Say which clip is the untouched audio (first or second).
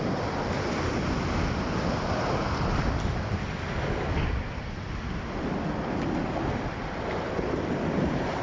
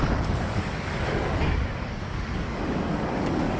first